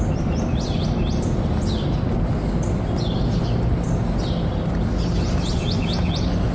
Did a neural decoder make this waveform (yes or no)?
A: no